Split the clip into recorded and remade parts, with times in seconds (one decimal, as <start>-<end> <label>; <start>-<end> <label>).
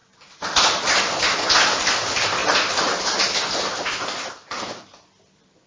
0.0-5.7 recorded